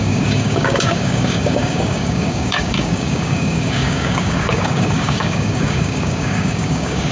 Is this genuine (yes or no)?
no